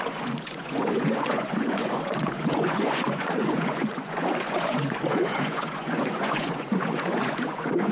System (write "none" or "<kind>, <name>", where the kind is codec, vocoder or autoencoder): vocoder, Vocos